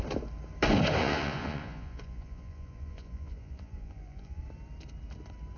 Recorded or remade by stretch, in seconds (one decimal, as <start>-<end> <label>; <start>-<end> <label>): 0.0-1.0 recorded; 1.0-4.4 remade; 4.4-5.6 recorded